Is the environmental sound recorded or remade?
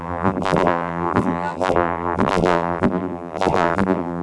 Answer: remade